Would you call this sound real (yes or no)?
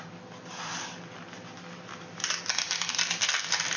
yes